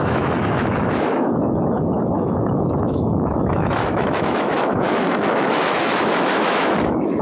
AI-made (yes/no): yes